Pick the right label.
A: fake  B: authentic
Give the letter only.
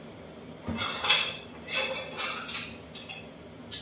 B